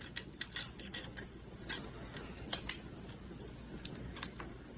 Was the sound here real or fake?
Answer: real